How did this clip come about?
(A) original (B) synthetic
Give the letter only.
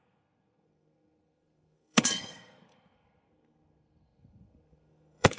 B